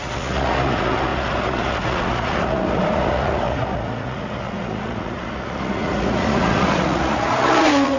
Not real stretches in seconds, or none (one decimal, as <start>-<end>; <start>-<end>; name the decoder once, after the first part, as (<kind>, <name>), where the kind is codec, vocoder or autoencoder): 0.0-8.0 (vocoder, Vocos)